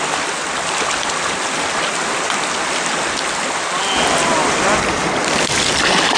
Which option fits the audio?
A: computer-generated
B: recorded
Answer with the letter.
B